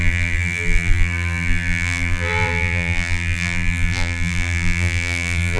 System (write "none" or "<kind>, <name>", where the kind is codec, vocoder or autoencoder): vocoder, BigVGAN v2